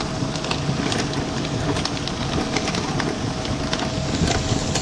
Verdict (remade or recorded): recorded